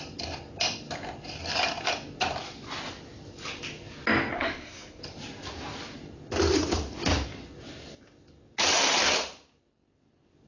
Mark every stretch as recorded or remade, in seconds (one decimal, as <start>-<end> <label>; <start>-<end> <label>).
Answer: 0.0-4.3 recorded; 4.3-5.0 remade; 5.0-10.5 recorded